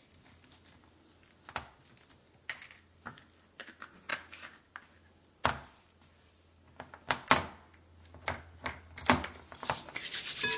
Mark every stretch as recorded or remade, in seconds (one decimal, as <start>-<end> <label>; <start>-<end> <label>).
0.0-10.6 recorded

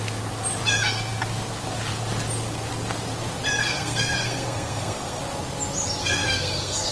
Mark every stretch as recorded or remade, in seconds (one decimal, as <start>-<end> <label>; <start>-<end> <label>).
0.0-3.6 recorded; 3.6-5.2 remade; 5.2-6.0 recorded; 6.0-6.9 remade

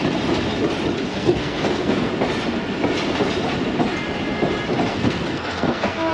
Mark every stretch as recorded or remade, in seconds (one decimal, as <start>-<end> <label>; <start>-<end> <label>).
0.0-1.1 recorded; 1.1-2.1 remade; 2.1-4.9 recorded; 4.9-6.1 remade

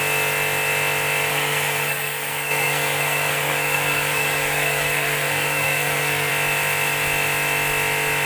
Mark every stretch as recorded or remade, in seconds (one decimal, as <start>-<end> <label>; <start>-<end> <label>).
0.0-1.3 recorded; 1.3-6.3 remade; 6.3-8.3 recorded

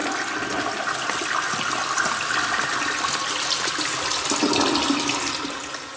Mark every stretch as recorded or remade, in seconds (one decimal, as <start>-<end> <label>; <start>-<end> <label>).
0.0-6.0 recorded